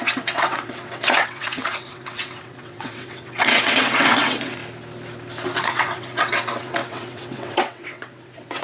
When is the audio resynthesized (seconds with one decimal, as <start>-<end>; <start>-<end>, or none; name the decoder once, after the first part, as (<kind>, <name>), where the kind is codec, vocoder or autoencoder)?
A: 0.0-4.6 (vocoder, WaveNeXt); 5.6-8.6